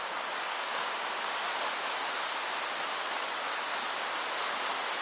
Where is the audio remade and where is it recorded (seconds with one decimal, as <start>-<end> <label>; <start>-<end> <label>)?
0.0-1.1 remade; 1.1-5.0 recorded